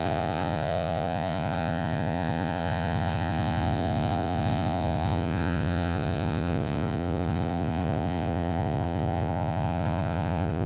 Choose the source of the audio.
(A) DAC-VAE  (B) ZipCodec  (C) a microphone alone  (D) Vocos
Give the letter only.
D